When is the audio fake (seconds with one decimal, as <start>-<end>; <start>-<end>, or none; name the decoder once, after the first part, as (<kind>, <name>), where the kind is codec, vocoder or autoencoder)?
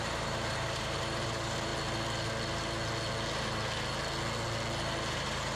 0.0-1.7 (vocoder, BigVGAN v2); 5.1-5.6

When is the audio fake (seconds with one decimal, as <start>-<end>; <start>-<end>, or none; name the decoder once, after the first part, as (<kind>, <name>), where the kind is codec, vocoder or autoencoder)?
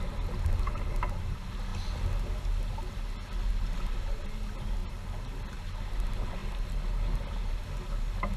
none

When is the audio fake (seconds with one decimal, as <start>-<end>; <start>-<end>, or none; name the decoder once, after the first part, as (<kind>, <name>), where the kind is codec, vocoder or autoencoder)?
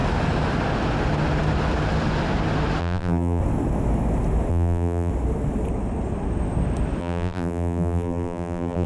2.8-3.4 (vocoder, BigVGAN v2); 4.5-5.1; 7.0-8.9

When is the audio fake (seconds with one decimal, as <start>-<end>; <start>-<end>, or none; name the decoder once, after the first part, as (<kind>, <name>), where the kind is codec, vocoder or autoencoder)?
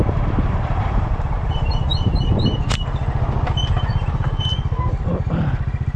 0.0-1.9 (vocoder, BigVGAN v2); 5.5-6.0